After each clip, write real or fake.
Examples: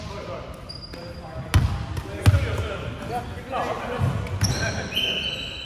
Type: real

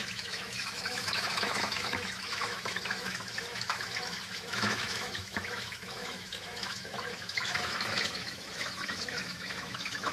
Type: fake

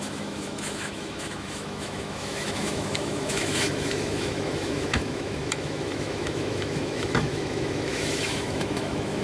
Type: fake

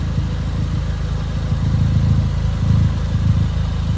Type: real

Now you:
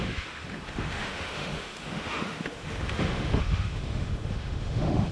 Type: fake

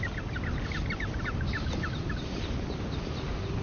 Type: real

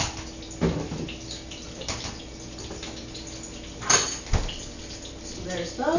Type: real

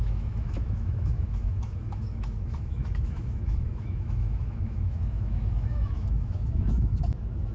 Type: fake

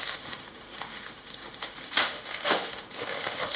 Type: fake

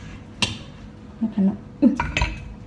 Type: real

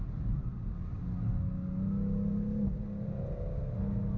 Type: real